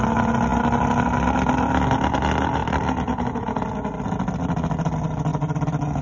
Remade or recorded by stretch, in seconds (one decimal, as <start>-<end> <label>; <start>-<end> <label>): 0.0-2.6 recorded; 2.6-3.5 remade; 3.5-6.0 recorded